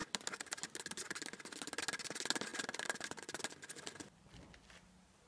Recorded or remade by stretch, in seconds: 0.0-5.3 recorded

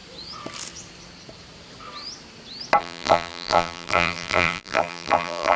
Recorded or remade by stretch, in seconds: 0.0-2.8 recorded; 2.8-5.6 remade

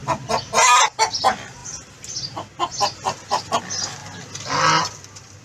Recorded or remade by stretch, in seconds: 0.0-5.4 recorded